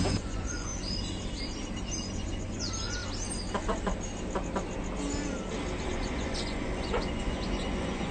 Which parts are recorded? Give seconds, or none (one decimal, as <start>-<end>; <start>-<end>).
0.7-2.1; 3.0-5.9